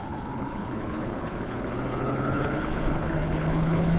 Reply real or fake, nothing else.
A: fake